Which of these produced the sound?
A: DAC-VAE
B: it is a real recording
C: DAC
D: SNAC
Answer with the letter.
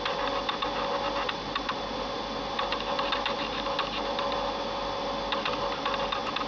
B